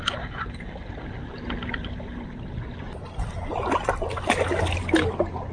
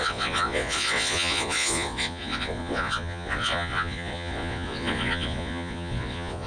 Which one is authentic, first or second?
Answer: first